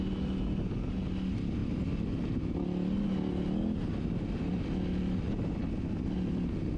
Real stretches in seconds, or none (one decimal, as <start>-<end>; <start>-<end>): 0.0-6.8